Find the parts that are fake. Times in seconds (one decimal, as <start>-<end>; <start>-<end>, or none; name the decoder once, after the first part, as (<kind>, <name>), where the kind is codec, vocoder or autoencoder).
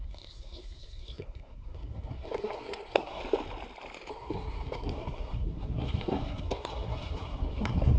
0.0-3.2 (codec, SNAC); 4.1-8.0